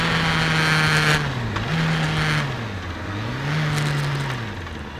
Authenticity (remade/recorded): recorded